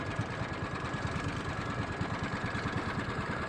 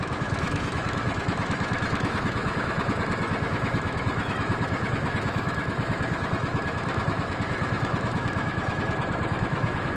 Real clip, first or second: first